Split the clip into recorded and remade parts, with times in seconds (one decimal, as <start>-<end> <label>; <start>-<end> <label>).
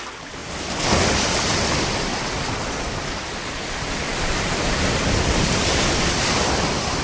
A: 0.0-0.4 remade; 0.4-3.2 recorded; 3.2-7.0 remade